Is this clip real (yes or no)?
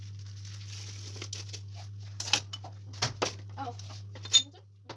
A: yes